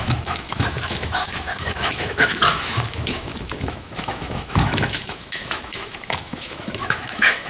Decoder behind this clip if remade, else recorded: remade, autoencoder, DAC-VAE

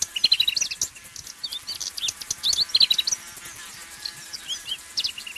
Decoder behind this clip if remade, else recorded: recorded